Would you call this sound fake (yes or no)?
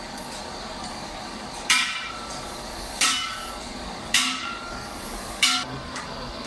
yes